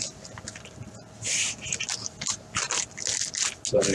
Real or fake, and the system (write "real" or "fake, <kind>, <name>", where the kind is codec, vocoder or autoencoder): real